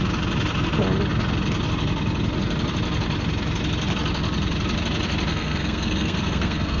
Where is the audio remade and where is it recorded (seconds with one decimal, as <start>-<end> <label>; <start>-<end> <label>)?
0.0-5.3 recorded; 5.3-6.8 remade